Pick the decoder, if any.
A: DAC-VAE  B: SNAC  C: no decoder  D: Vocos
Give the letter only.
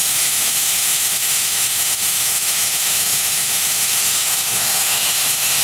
A